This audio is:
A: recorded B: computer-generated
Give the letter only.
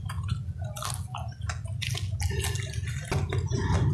A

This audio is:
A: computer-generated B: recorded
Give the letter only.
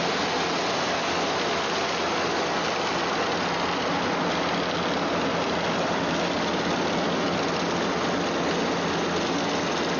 B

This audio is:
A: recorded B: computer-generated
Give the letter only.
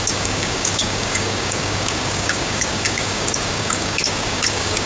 B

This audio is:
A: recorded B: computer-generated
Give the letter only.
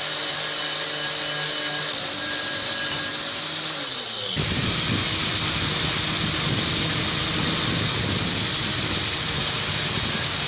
A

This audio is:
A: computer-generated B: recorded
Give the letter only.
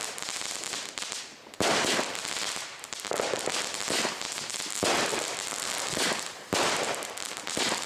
A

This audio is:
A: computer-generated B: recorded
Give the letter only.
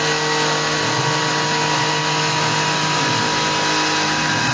B